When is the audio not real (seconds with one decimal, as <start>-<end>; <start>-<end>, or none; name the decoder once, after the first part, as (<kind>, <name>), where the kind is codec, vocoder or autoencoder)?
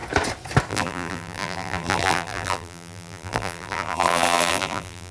0.7-5.1 (vocoder, BigVGAN v2)